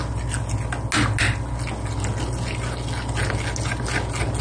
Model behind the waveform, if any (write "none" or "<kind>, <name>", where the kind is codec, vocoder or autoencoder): none